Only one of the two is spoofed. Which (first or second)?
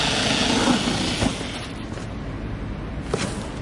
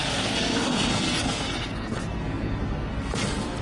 second